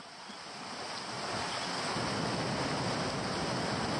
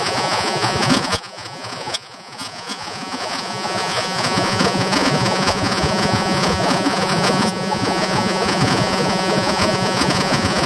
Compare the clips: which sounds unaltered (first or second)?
first